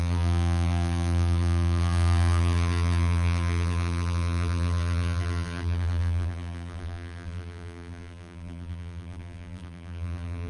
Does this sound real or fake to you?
fake